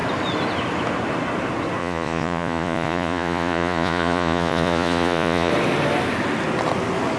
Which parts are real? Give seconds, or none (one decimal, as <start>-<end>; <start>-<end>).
0.0-1.8; 5.5-7.2